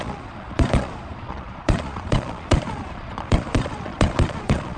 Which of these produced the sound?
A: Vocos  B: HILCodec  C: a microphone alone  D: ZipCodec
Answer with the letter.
A